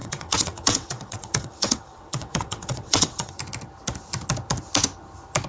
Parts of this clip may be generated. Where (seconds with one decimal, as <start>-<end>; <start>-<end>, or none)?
0.0-3.3